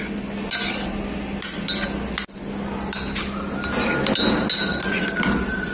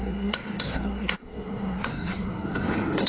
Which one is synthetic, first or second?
second